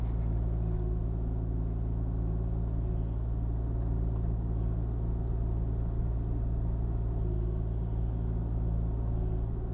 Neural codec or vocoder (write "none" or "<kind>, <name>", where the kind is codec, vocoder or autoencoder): none